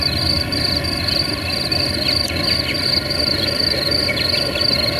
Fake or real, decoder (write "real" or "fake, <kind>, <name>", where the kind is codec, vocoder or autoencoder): real